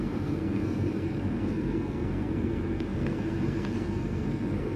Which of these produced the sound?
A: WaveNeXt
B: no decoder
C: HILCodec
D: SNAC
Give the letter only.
D